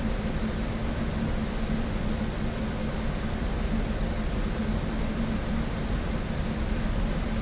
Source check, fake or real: real